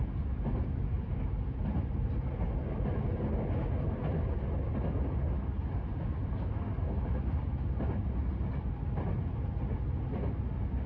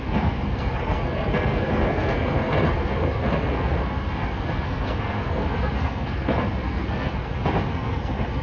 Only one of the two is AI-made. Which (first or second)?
second